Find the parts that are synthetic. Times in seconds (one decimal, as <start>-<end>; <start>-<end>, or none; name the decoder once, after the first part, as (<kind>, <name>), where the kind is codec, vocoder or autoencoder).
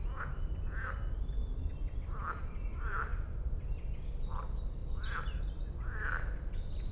0.0-6.9 (vocoder, BigVGAN v2)